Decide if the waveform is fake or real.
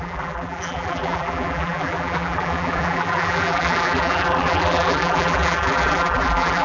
fake